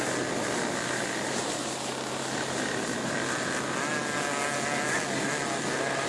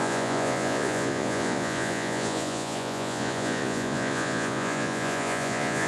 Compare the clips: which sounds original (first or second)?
first